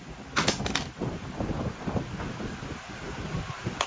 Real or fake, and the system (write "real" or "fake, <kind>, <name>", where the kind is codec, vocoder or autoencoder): real